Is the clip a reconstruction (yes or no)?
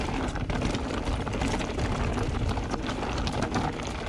no